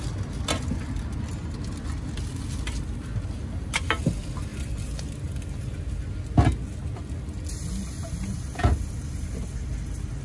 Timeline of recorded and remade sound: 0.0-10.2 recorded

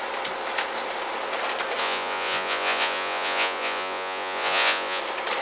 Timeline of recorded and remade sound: 0.0-1.8 recorded; 1.8-5.0 remade; 5.0-5.4 recorded

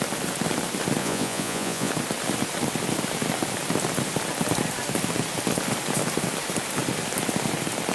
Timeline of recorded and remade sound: 0.0-1.0 recorded; 1.0-1.9 remade; 1.9-7.9 recorded

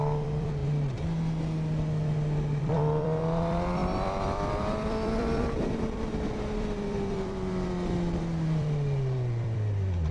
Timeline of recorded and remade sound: 0.0-0.6 remade; 0.6-2.6 recorded; 2.6-10.1 remade

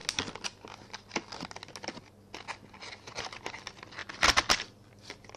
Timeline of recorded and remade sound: 0.0-5.4 recorded

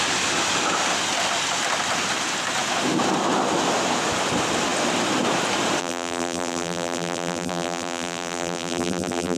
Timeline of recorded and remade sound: 0.0-5.8 recorded; 5.8-9.4 remade

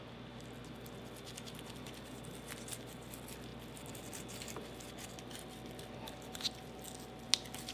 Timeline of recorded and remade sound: 0.0-7.7 recorded

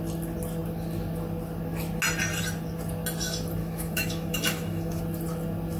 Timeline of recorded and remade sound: 0.0-3.6 recorded; 3.6-5.0 remade; 5.0-5.8 recorded